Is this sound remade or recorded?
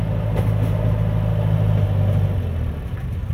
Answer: recorded